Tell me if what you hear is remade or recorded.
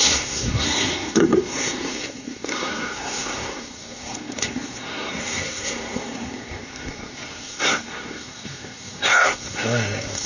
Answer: remade